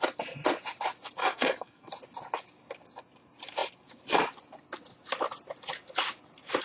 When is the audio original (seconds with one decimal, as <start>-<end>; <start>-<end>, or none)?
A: 0.0-1.2; 1.9-6.6